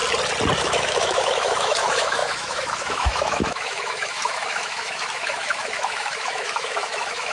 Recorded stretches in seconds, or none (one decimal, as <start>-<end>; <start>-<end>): 0.0-0.6